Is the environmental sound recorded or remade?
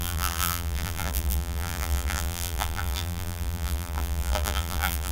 remade